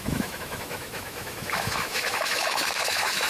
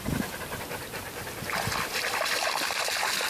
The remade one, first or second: first